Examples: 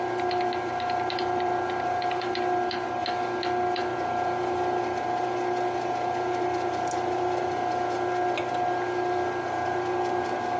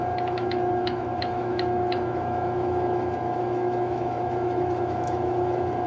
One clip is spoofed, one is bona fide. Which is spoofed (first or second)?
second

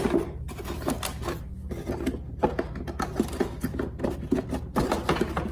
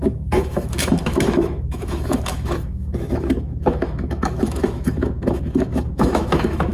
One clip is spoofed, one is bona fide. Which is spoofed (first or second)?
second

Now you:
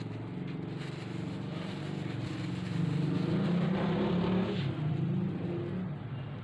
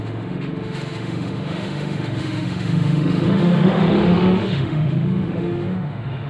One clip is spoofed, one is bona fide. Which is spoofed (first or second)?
second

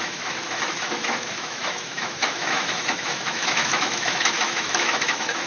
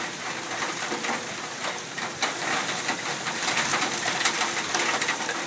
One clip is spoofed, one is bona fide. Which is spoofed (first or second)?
first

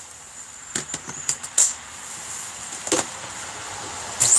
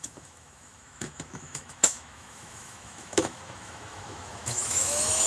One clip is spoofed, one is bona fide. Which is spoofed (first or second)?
second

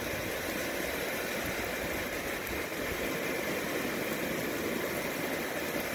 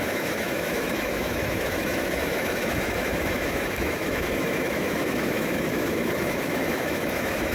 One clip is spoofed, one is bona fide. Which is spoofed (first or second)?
second